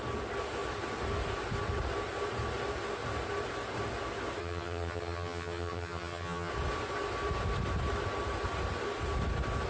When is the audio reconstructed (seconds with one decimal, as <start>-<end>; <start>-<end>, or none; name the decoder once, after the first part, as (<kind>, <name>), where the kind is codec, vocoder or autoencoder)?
4.4-6.5 (vocoder, HiFi-GAN)